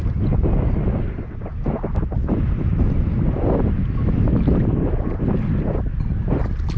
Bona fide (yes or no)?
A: yes